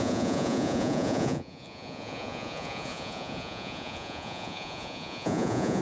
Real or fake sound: fake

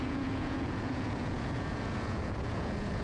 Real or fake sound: fake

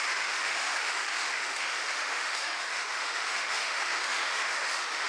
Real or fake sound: fake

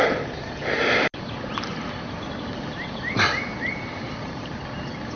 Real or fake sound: real